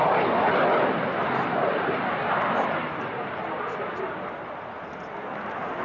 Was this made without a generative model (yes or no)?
yes